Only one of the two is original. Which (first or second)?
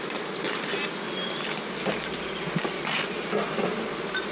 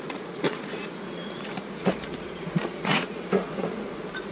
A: first